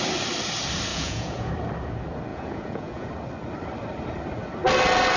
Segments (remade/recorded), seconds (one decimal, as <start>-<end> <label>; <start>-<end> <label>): 0.0-0.9 recorded; 0.9-1.5 remade; 1.5-2.3 recorded; 2.3-3.1 remade; 3.1-5.2 recorded